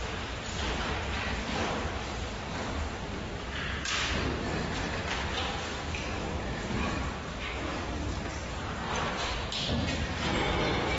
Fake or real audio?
fake